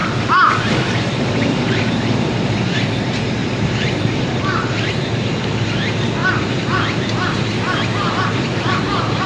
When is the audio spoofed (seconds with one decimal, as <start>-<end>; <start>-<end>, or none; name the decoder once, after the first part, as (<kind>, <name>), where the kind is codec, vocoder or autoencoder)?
0.0-2.3 (vocoder, BigVGAN v2); 3.4-5.2; 6.2-7.4

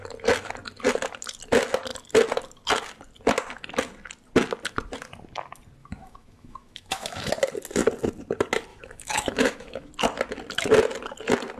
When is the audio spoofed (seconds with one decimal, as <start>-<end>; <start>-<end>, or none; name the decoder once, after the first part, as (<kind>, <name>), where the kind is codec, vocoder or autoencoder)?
5.8-7.3 (autoencoder, DAC-VAE); 8.7-9.9

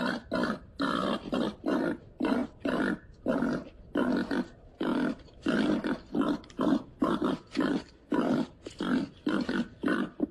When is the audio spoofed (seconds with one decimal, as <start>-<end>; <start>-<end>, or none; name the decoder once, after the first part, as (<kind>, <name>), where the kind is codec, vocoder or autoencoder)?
4.9-8.7 (vocoder, BigVGAN v2)

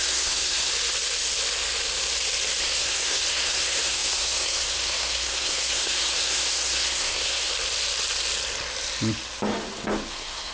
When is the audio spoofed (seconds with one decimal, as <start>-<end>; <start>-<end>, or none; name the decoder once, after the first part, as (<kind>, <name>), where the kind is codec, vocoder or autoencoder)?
0.0-0.7 (codec, SNAC); 2.6-7.5; 10.1-10.5